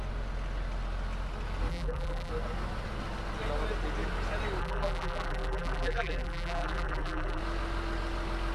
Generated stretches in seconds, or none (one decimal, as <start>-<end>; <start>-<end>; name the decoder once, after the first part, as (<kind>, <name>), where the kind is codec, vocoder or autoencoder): 1.7-2.3 (vocoder, BigVGAN v2); 4.6-7.4